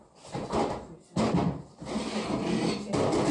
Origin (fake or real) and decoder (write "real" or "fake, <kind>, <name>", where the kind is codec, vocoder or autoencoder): real